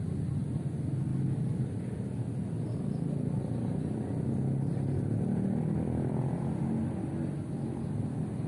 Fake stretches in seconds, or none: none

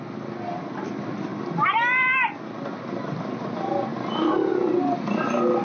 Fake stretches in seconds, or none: none

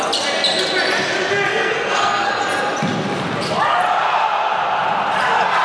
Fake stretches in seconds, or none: 1.5-2.3 (codec, SNAC)

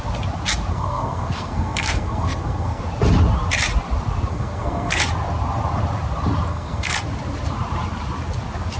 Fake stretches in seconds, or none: 0.7-2.8 (codec, SNAC); 4.3-5.0; 6.5-7.0

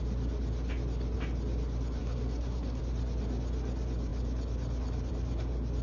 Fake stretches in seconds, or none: 2.0-2.8 (codec, SNAC)

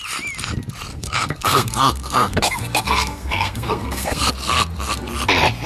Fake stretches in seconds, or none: 0.9-4.3 (codec, SNAC)

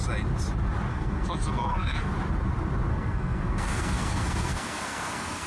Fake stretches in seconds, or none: 0.9-2.1 (codec, SNAC); 2.9-5.5

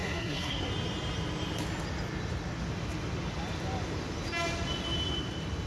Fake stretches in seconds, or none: 0.0-0.7 (codec, SNAC)